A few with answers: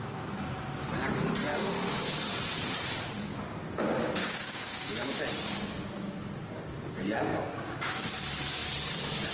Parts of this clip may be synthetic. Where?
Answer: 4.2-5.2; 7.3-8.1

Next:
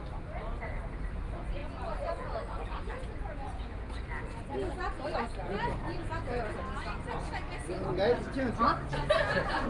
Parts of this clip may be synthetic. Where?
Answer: none

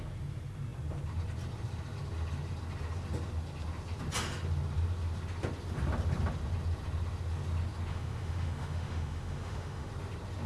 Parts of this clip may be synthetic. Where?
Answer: 7.9-9.9